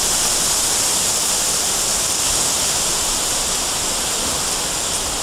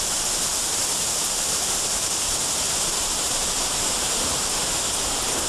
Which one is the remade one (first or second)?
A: second